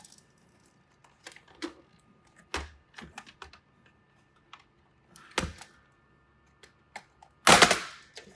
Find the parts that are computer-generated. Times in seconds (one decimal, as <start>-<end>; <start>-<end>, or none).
none